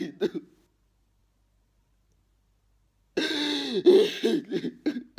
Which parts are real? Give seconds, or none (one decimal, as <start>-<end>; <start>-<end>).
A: 0.0-5.2